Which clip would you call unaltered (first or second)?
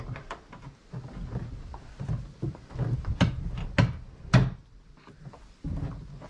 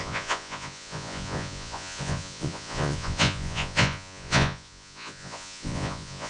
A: first